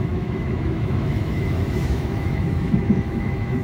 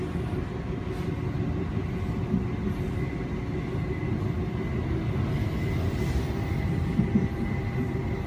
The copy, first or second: first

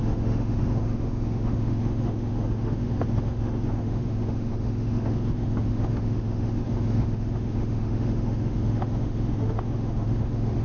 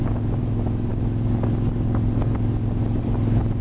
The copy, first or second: first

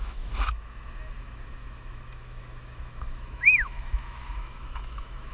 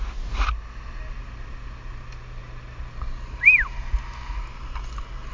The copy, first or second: first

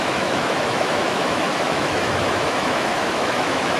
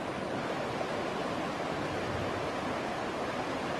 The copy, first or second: first